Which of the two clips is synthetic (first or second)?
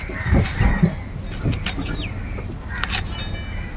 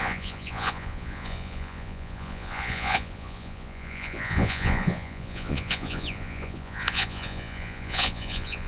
second